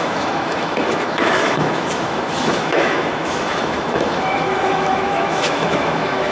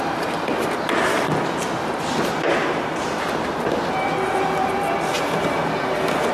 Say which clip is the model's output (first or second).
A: first